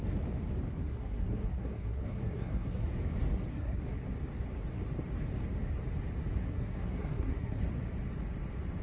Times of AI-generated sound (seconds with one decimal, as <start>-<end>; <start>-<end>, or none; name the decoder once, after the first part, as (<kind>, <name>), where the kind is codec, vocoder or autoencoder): 0.8-2.9 (codec, SNAC); 3.5-4.0; 6.4-7.6